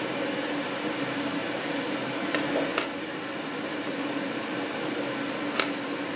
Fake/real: real